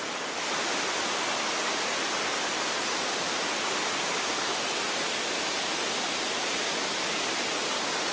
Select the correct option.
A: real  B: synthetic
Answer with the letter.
A